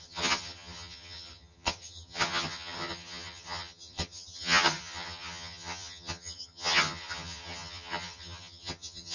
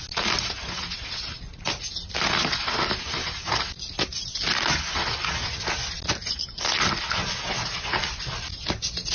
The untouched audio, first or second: second